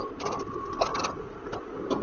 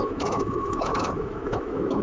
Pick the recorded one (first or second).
first